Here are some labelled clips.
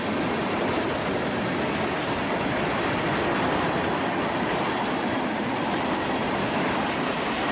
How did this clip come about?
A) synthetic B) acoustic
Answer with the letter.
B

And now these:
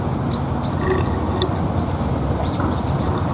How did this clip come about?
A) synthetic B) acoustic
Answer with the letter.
B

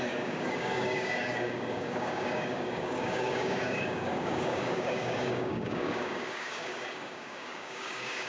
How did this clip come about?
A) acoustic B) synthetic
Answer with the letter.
B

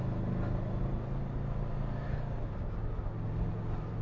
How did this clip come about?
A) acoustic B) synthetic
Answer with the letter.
A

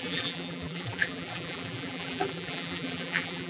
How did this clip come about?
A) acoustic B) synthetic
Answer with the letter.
B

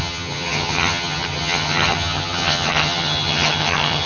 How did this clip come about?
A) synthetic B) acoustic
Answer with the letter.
A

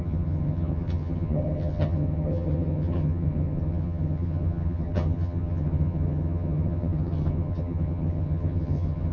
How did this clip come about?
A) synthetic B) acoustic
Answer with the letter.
A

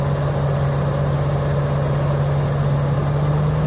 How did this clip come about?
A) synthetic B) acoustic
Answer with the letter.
B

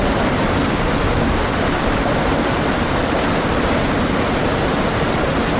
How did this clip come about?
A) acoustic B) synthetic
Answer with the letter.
B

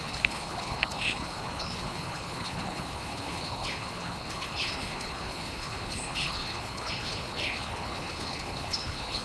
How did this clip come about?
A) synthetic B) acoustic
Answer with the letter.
A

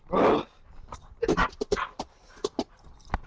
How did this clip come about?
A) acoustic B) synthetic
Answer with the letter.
A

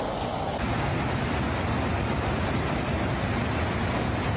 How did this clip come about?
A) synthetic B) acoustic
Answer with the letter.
B